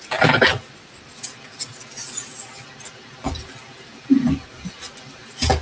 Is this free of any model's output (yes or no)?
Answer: yes